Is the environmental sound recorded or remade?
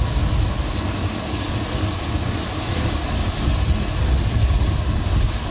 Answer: recorded